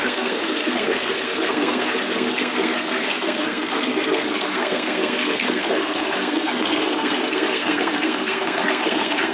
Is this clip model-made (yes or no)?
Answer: yes